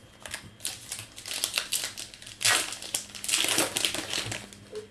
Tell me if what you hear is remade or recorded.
recorded